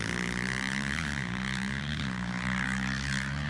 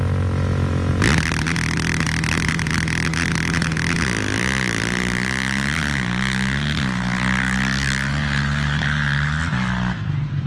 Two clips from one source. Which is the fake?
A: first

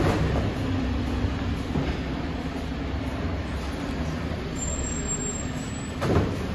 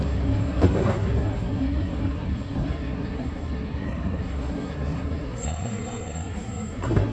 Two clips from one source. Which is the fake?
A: second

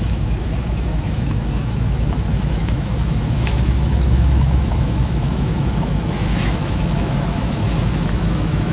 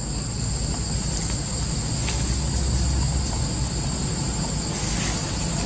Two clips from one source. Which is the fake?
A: first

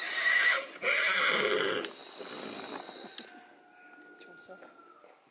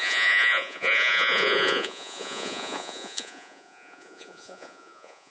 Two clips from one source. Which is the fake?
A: second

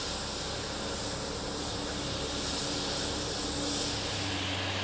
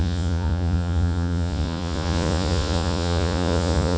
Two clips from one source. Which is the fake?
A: second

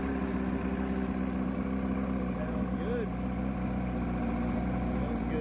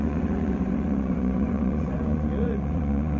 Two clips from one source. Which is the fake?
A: second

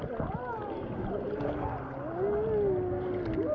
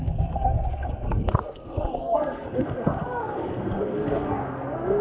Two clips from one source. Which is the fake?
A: second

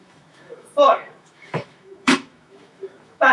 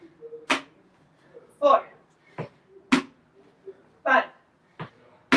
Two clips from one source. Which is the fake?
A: first